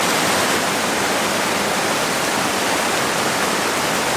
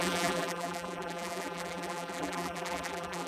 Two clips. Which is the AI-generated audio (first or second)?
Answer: second